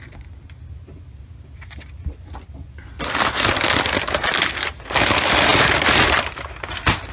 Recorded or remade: recorded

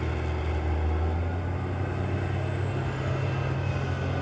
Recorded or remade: recorded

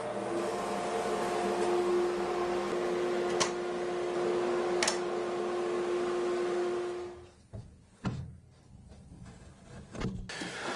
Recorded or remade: recorded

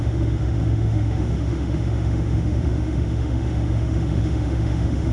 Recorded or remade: remade